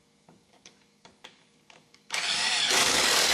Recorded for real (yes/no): no